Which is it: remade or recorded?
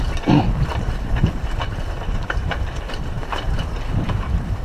remade